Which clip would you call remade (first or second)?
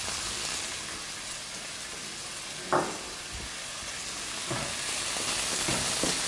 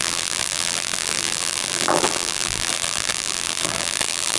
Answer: second